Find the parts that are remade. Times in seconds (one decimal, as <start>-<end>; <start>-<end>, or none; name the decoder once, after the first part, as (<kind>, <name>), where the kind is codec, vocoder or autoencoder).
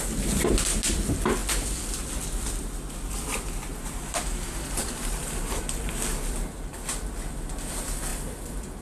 3.7-5.8 (vocoder, BigVGAN v2)